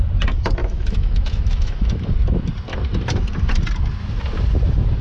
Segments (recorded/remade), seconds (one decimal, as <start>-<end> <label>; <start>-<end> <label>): 0.0-0.6 recorded; 0.6-2.0 remade; 2.0-5.0 recorded